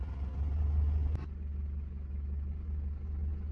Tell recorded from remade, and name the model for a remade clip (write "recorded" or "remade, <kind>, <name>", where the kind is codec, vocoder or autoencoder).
recorded